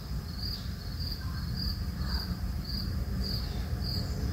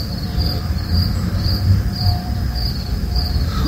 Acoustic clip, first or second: first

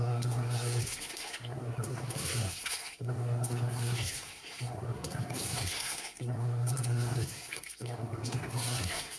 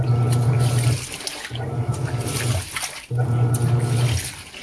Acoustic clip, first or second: second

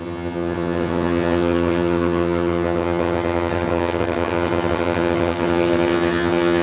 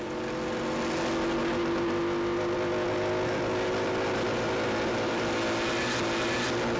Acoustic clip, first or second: second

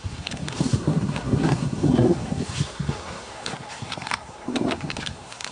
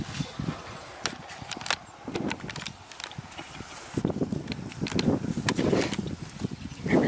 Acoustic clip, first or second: second